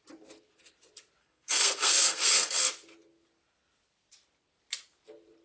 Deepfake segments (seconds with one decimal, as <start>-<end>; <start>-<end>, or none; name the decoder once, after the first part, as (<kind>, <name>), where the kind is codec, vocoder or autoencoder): 1.2-2.7 (codec, SNAC)